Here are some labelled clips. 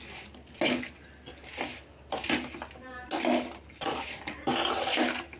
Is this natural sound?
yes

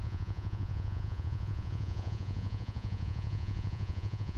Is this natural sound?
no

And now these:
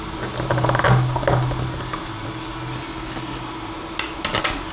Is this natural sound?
yes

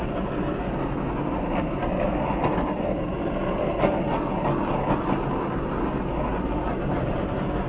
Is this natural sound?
yes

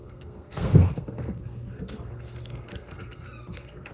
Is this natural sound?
no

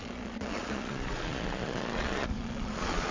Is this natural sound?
no